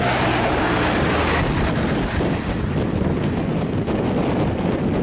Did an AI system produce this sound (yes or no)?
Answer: no